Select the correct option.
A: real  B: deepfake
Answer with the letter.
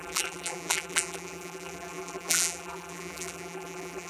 B